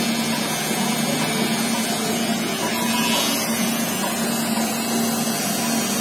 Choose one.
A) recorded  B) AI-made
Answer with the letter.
A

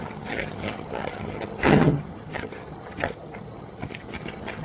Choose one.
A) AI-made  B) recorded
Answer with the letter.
A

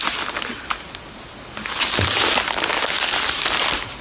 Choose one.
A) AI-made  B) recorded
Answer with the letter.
B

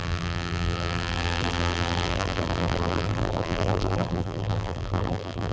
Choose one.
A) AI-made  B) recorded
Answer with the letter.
A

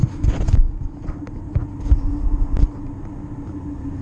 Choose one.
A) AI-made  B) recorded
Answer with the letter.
B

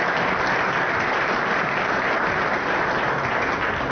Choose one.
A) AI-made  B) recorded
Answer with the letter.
B